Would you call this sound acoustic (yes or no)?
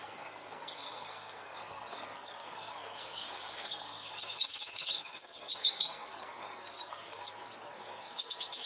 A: no